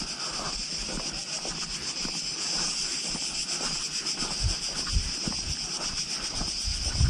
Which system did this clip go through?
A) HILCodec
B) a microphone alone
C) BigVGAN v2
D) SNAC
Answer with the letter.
B